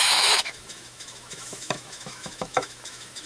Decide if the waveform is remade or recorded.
remade